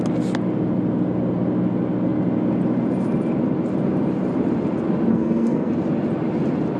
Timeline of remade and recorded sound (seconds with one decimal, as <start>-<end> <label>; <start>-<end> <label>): 0.0-5.1 recorded; 5.1-5.7 remade; 5.7-6.8 recorded